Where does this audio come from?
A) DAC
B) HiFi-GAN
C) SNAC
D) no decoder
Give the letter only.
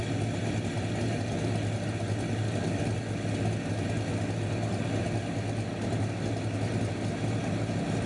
D